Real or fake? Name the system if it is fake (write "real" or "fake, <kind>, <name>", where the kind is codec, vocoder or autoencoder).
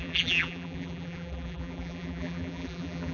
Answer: fake, vocoder, BigVGAN v2